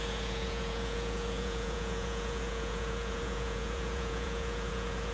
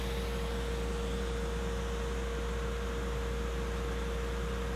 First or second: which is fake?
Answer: first